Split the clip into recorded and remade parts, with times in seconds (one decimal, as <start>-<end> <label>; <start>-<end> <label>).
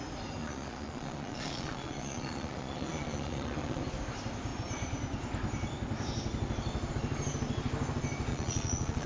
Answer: 0.0-0.4 recorded; 0.4-3.8 remade; 3.8-8.3 recorded; 8.3-9.1 remade